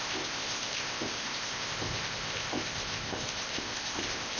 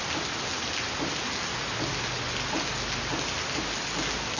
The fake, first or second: first